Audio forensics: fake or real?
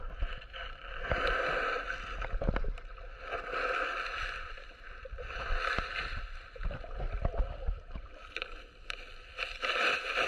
real